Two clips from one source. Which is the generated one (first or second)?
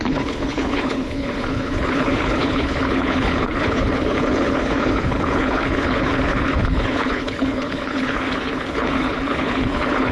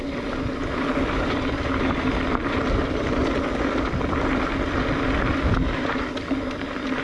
first